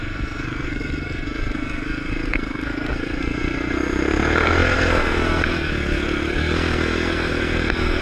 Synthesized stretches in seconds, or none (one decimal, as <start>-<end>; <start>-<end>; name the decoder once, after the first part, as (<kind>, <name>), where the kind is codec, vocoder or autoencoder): 0.0-8.0 (codec, SNAC)